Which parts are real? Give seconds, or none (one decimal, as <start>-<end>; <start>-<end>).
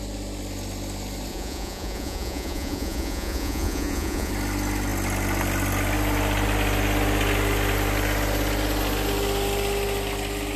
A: 0.0-1.3; 4.3-10.6